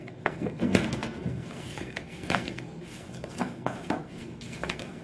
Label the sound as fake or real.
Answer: fake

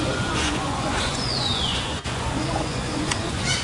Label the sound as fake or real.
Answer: fake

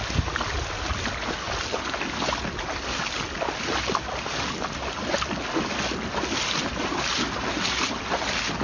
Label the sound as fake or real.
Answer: real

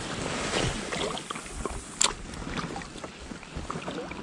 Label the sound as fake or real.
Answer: real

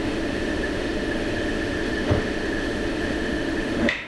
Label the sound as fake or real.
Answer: fake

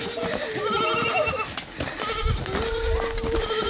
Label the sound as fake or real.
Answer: real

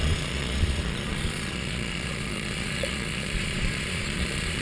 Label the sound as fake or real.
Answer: fake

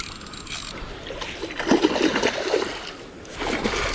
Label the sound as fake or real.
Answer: real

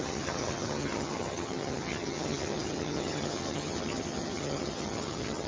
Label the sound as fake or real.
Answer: fake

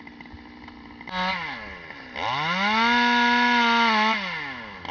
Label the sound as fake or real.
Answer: real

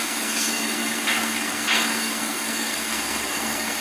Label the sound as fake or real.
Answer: fake